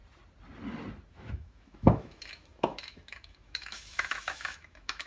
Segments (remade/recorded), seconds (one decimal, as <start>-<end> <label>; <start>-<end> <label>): 0.0-1.1 recorded; 1.1-5.1 remade